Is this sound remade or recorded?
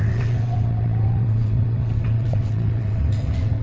remade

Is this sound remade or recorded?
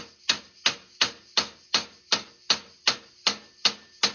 recorded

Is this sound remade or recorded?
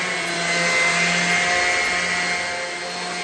recorded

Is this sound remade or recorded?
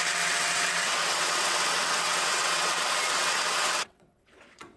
remade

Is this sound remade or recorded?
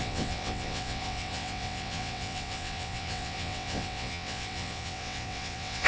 remade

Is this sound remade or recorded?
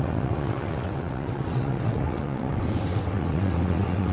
remade